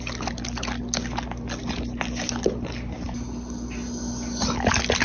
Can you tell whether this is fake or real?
real